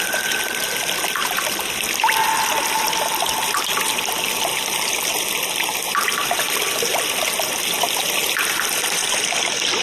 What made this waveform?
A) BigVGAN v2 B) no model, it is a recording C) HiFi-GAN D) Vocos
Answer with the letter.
B